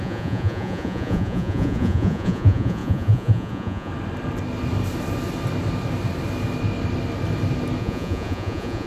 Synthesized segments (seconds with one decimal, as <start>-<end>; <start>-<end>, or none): 0.0-3.9; 7.8-8.9